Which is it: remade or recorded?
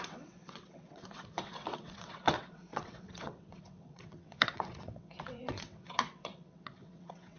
remade